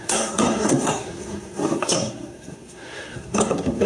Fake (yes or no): yes